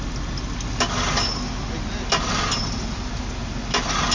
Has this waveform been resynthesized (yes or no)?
no